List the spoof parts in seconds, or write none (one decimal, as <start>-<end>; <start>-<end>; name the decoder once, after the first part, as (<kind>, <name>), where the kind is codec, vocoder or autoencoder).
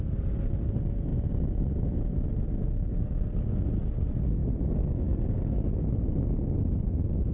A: none